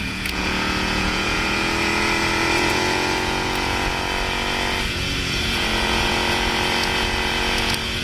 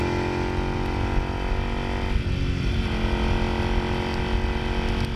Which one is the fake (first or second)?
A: first